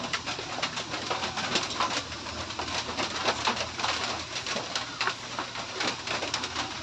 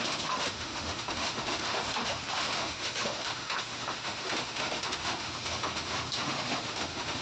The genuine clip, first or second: first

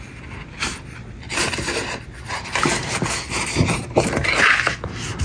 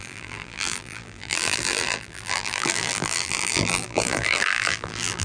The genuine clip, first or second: first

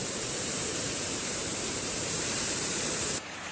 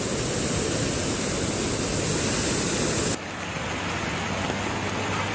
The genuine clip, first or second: second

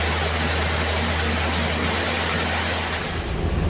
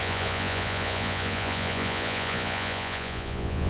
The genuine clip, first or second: first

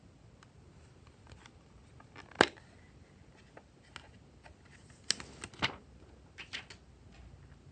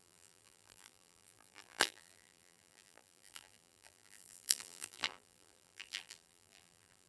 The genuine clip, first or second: first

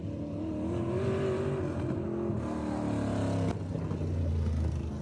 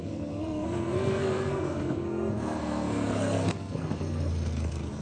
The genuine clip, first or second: first